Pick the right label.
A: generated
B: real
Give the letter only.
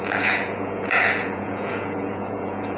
A